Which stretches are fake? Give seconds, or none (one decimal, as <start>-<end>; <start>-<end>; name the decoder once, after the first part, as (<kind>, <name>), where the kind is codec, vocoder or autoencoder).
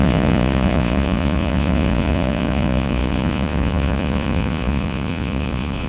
0.0-5.9 (vocoder, Vocos)